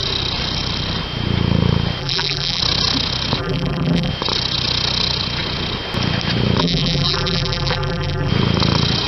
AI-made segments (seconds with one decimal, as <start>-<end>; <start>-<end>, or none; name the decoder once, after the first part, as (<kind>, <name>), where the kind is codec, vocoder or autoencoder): 2.0-2.6 (vocoder, BigVGAN v2); 3.4-4.1; 6.6-8.3

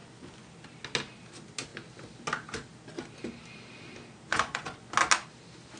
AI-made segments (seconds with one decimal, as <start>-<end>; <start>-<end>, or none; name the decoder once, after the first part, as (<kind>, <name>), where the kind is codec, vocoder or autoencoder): 0.0-0.5 (vocoder, Vocos); 4.3-4.9

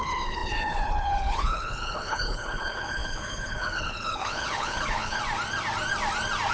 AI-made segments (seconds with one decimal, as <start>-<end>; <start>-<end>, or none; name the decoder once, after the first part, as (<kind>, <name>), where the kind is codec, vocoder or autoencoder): 0.0-5.2 (codec, HILCodec)

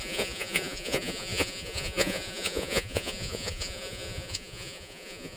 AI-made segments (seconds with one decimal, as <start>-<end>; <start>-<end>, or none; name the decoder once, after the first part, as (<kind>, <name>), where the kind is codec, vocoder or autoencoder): 0.0-5.4 (vocoder, Vocos)